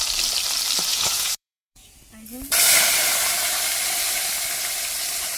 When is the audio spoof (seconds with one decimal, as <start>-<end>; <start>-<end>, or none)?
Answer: 0.9-2.0